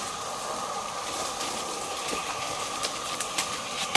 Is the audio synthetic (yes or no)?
no